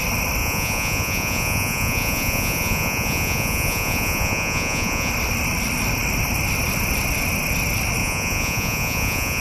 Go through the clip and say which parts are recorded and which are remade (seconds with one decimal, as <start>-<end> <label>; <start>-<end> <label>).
0.0-0.4 recorded; 0.4-5.1 remade; 5.1-8.0 recorded; 8.0-9.4 remade